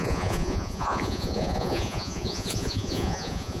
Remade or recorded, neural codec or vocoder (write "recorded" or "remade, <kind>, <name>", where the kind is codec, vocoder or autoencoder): remade, vocoder, Vocos